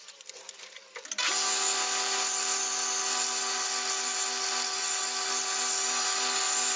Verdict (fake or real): real